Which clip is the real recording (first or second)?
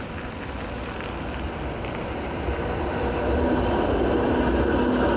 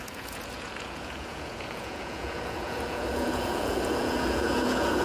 first